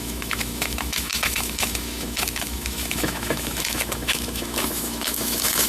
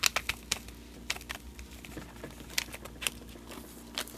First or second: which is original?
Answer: second